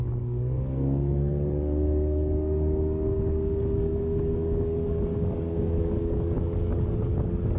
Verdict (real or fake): fake